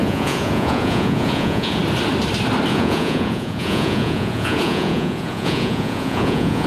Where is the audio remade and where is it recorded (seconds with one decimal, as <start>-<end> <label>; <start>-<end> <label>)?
0.0-1.8 remade; 1.8-2.7 recorded; 2.7-6.7 remade